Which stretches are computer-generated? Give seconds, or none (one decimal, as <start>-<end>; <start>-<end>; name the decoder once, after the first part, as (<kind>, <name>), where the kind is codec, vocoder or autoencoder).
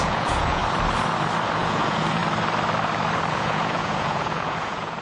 0.0-0.6 (vocoder, Vocos); 1.6-2.2; 3.3-5.0